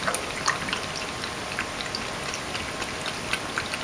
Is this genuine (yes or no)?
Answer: yes